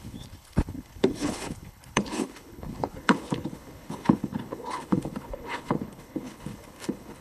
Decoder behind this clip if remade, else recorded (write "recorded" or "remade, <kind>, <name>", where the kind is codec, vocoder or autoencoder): remade, codec, HILCodec